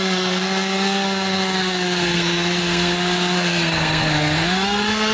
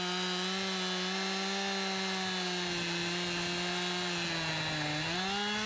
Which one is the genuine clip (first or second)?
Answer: second